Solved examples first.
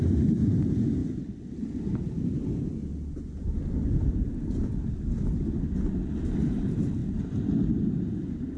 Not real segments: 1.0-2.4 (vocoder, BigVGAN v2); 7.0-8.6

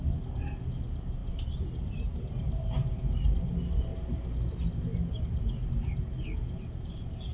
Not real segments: 1.2-3.0 (vocoder, BigVGAN v2)

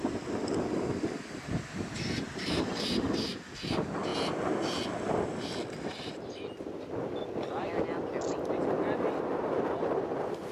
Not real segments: 0.0-4.1 (vocoder, BigVGAN v2); 7.8-10.5

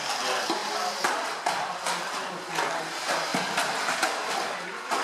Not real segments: none

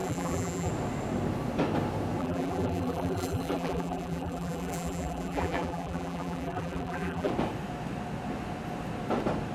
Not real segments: 0.0-0.7 (vocoder, BigVGAN v2); 2.2-7.3